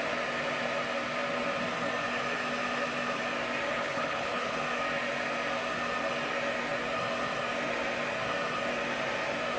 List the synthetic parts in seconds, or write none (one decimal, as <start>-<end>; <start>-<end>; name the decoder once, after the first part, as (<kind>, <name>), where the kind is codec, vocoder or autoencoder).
3.7-4.5 (codec, HILCodec)